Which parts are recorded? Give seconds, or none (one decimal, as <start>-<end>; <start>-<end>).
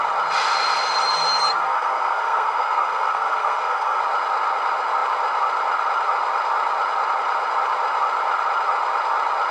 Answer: 0.0-1.5; 4.0-9.5